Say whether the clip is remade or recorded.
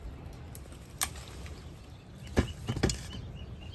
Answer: recorded